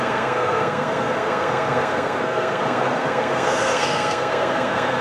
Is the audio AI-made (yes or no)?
yes